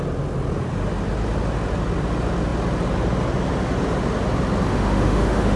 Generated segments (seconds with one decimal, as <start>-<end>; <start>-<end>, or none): 4.7-5.6